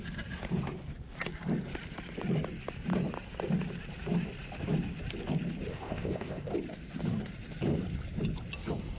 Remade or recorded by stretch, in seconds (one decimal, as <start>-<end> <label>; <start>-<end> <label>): 0.0-5.7 recorded; 5.7-6.5 remade; 6.5-9.0 recorded